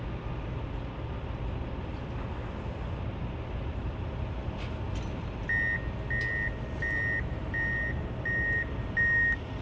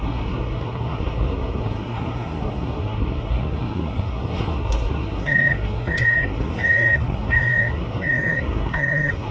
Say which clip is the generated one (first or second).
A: second